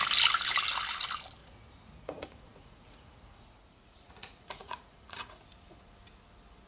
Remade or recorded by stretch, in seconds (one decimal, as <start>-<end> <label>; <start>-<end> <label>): 0.0-1.4 recorded; 1.4-5.4 remade; 5.4-6.7 recorded